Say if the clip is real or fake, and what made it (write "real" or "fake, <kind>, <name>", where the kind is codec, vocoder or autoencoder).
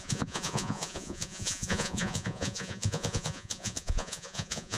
fake, vocoder, Vocos